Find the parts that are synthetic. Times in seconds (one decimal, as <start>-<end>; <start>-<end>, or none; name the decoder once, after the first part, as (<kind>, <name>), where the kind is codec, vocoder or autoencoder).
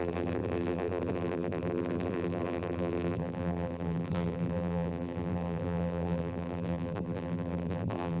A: 0.0-8.2 (vocoder, BigVGAN v2)